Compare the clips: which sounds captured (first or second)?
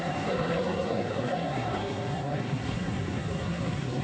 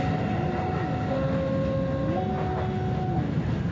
second